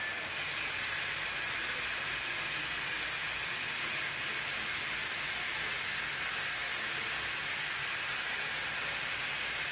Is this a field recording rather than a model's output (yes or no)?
yes